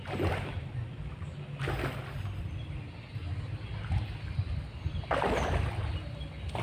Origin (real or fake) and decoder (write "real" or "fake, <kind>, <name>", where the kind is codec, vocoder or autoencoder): real